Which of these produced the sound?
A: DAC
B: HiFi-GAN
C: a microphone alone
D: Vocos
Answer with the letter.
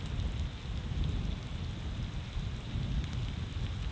C